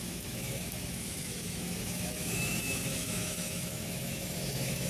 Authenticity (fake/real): fake